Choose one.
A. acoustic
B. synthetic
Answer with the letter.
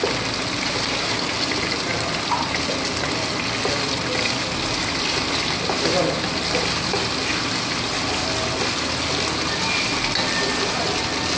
A